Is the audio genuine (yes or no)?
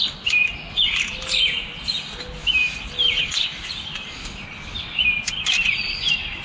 yes